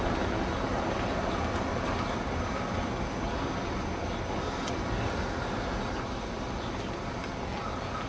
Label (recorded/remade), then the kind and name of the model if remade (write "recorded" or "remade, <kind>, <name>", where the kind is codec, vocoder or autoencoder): recorded